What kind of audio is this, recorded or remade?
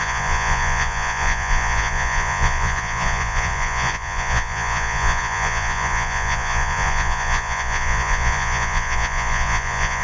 remade